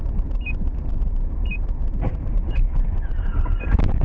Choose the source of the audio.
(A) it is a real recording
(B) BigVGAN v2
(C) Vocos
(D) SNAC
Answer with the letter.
B